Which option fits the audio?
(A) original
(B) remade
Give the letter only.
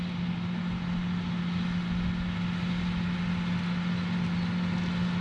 A